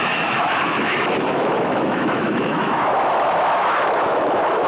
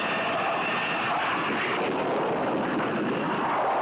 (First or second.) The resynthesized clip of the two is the first